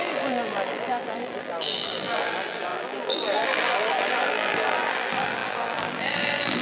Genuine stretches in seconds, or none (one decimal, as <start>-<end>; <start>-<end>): none